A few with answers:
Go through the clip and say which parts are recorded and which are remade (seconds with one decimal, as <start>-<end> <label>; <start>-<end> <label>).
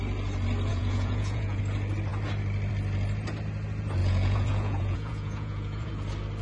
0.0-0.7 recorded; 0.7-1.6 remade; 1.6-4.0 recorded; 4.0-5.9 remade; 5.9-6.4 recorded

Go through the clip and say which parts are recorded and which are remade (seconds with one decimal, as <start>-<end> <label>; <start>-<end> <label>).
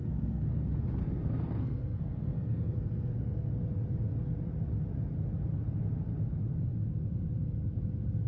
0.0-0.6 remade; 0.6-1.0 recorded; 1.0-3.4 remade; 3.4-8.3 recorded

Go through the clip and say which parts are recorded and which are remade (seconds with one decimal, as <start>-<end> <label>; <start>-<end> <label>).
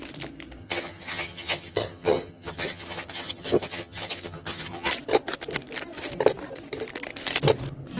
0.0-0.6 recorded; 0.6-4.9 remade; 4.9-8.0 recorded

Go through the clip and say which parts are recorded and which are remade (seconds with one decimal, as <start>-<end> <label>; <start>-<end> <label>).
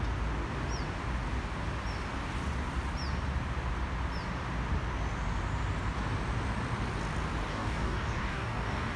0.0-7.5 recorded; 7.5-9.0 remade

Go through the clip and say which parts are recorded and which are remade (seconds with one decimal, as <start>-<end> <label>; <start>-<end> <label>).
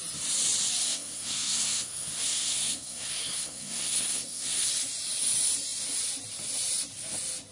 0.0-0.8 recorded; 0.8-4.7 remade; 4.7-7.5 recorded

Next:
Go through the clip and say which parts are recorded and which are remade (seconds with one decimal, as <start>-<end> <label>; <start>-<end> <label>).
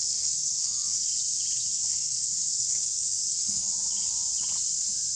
0.0-1.1 remade; 1.1-1.7 recorded; 1.7-3.7 remade; 3.7-5.2 recorded